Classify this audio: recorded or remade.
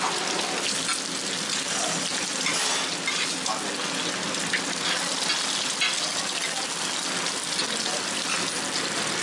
recorded